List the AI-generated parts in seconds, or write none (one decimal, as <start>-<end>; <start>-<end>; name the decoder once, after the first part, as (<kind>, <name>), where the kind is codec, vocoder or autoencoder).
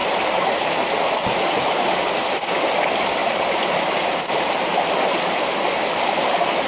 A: 0.0-0.8 (vocoder, BigVGAN v2); 3.2-5.2